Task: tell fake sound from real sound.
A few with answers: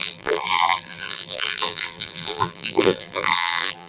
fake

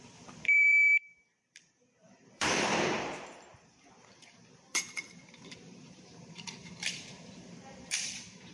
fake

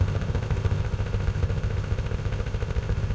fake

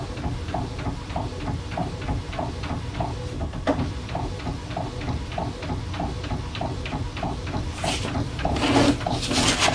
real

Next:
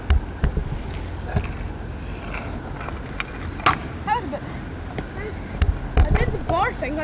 real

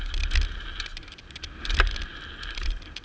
real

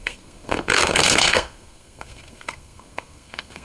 fake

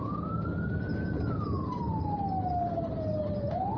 real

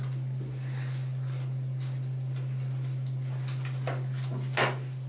real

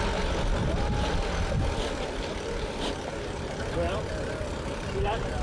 real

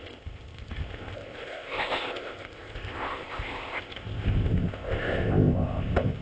fake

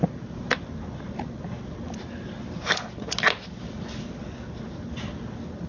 real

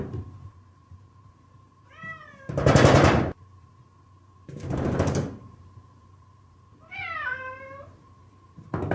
fake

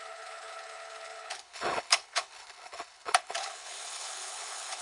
fake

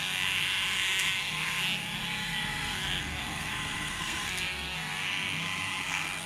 fake